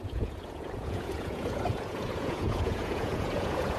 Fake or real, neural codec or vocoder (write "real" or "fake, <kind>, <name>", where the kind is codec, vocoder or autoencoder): fake, vocoder, Vocos